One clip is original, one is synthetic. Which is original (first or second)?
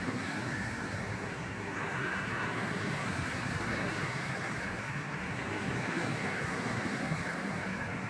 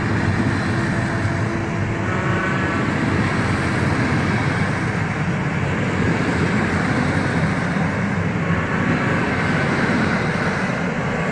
second